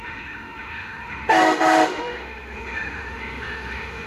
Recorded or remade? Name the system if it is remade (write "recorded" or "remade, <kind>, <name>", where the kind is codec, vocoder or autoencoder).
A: remade, autoencoder, DAC-VAE